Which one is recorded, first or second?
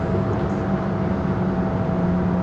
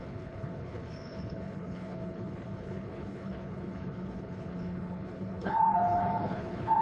first